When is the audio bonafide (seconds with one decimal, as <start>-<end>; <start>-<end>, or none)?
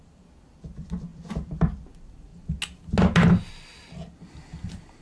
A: 0.0-5.0